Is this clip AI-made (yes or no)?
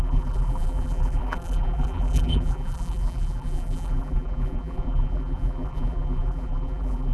yes